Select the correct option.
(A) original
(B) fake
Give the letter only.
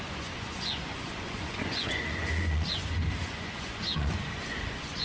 B